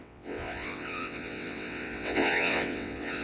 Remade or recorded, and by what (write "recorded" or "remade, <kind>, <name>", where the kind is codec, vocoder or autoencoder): remade, vocoder, WaveNeXt